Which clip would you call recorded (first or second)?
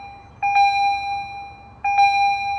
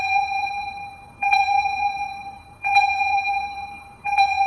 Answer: first